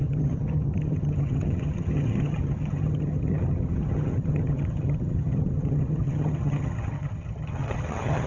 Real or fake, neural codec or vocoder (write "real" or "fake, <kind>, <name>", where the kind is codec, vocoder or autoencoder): fake, vocoder, HiFi-GAN